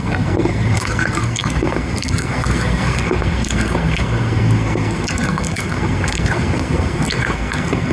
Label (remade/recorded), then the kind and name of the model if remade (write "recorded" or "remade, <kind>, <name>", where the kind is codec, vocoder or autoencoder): remade, codec, SNAC